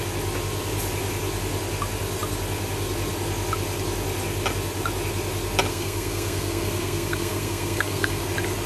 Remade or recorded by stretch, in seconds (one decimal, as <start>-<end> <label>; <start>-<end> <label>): 0.0-5.7 recorded; 5.7-8.2 remade; 8.2-8.7 recorded